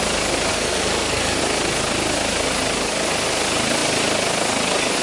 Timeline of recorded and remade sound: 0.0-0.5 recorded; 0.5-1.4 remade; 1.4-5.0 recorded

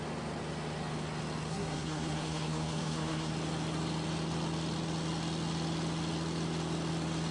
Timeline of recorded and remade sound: 0.0-1.5 recorded; 1.5-3.3 remade; 3.3-7.3 recorded

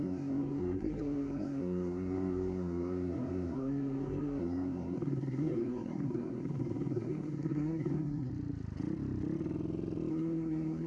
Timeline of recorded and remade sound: 0.0-8.3 remade; 8.3-10.1 recorded; 10.1-10.9 remade

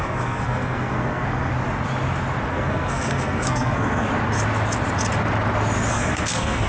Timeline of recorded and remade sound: 0.0-1.5 remade; 1.5-2.5 recorded; 2.5-4.1 remade; 4.1-5.9 recorded; 5.9-6.7 remade